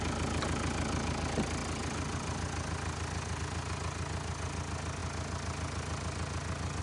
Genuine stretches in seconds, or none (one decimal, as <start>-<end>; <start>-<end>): 0.0-6.8